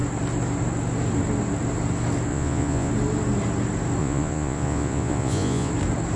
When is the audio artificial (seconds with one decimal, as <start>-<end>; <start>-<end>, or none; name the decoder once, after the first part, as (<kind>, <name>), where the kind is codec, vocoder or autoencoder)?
2.3-2.9 (vocoder, Vocos); 4.0-5.7